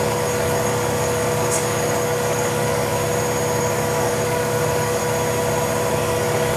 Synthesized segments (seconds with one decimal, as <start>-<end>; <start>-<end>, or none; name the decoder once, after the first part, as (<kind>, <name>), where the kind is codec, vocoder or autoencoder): 0.0-2.9 (codec, DAC); 3.6-5.0; 5.9-6.6